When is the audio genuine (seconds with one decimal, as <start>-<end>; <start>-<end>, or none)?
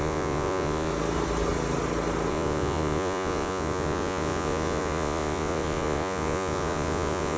0.9-2.3